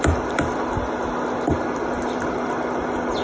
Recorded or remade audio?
recorded